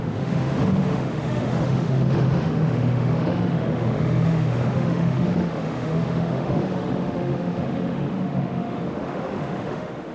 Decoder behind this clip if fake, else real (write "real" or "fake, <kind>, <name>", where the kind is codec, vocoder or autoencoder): fake, autoencoder, DAC-VAE